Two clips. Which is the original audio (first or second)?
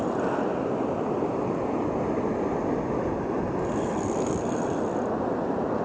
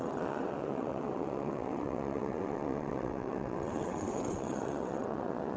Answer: first